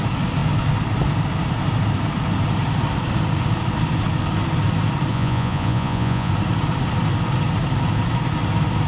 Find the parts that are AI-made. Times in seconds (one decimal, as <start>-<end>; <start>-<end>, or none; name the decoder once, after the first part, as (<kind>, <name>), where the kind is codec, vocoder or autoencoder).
5.1-6.3 (vocoder, Vocos)